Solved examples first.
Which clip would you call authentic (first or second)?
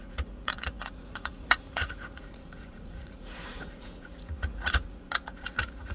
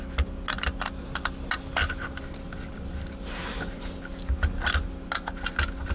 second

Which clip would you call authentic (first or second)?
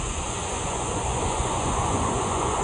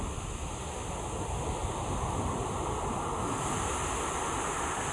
second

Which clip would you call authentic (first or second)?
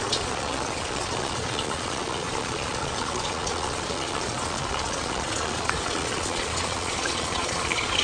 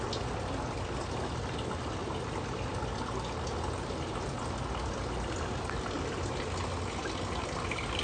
second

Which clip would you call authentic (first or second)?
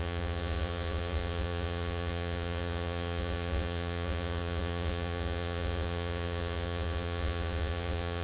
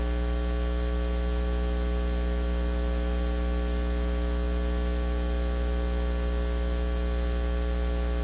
second